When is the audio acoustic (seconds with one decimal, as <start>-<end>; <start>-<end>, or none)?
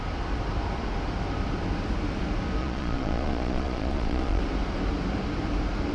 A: 0.0-2.6; 4.4-5.9